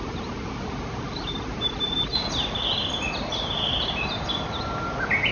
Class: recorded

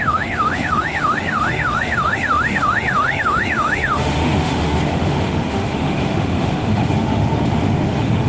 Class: remade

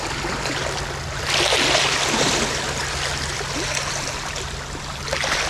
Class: recorded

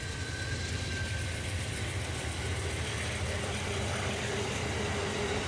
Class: recorded